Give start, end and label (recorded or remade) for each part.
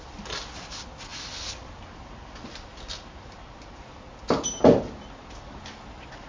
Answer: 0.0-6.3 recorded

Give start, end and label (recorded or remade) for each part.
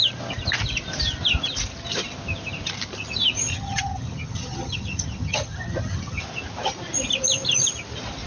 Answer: 0.0-3.5 recorded; 3.5-6.2 remade; 6.2-8.3 recorded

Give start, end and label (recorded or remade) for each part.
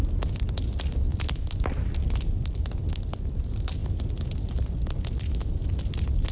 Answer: 0.0-6.3 recorded